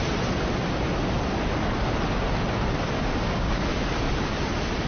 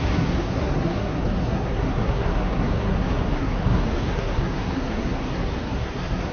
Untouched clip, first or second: first